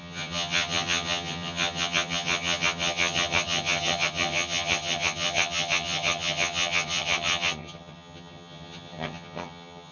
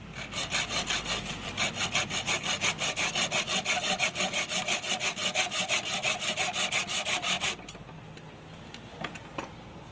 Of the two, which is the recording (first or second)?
second